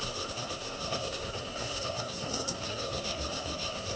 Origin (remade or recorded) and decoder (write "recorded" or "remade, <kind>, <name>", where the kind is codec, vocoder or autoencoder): remade, codec, SNAC